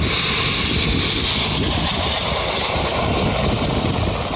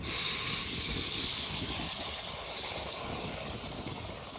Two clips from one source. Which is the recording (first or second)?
first